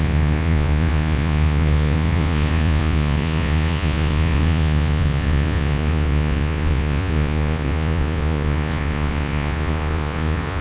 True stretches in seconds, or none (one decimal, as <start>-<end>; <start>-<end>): none